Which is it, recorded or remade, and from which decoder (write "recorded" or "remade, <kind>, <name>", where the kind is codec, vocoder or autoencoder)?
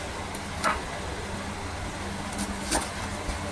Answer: recorded